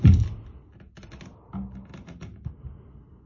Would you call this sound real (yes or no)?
yes